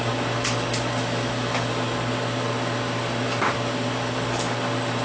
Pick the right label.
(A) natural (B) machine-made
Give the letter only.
A